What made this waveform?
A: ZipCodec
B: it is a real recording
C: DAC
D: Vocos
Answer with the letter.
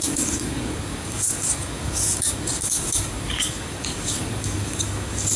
C